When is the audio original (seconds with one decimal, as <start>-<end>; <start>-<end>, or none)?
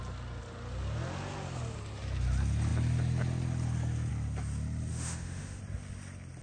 0.0-4.9; 5.6-6.4